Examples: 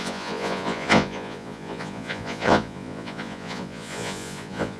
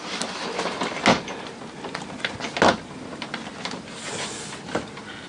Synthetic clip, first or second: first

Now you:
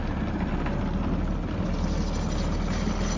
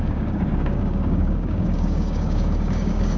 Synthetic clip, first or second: second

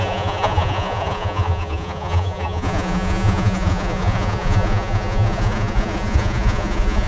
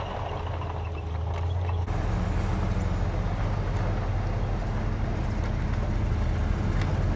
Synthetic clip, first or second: first